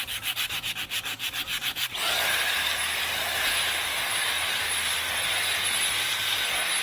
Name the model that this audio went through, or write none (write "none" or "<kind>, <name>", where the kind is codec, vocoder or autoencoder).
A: vocoder, BigVGAN v2